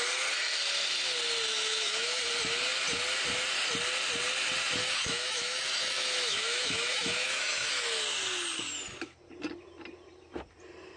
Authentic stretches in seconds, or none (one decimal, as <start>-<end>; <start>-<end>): 0.0-1.5; 2.2-4.8; 7.7-11.0